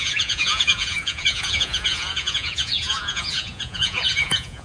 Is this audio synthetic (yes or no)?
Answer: yes